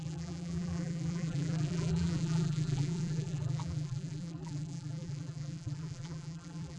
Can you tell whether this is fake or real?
fake